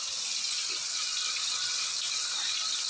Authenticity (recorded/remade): recorded